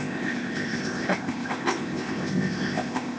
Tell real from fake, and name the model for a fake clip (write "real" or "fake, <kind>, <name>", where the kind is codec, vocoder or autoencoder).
fake, codec, ZipCodec